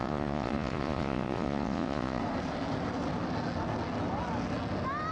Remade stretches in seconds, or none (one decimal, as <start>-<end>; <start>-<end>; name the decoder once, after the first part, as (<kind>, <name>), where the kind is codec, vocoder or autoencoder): 0.0-2.2 (vocoder, Vocos)